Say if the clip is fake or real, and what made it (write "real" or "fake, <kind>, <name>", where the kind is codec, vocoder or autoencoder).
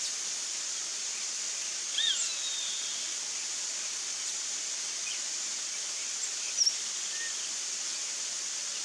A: real